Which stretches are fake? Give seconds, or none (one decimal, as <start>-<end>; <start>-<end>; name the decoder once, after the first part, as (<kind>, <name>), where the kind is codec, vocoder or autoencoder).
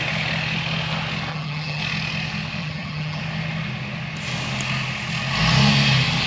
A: 1.3-1.8 (vocoder, HiFi-GAN); 2.6-3.2